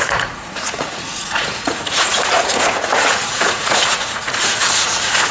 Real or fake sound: fake